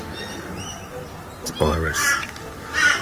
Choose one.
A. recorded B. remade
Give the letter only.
A